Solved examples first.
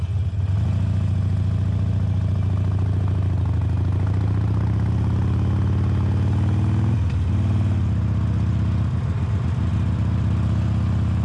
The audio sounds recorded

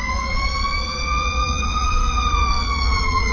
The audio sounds remade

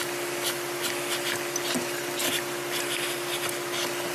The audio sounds recorded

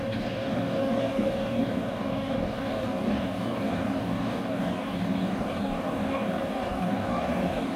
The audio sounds remade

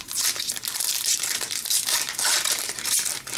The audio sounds remade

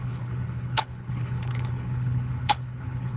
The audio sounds remade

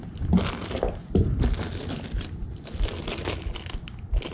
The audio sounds recorded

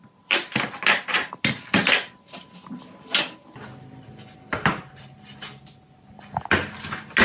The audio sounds recorded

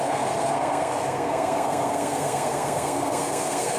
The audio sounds remade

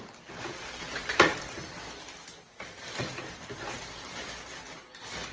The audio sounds recorded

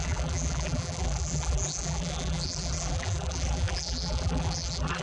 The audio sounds remade